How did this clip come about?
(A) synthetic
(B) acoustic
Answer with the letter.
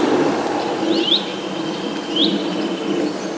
B